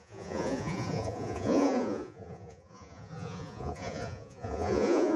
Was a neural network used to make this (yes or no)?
yes